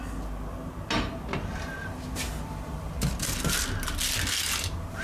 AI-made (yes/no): no